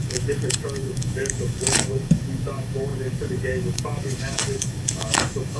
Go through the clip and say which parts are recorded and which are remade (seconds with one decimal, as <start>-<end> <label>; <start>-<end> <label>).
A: 0.0-5.6 remade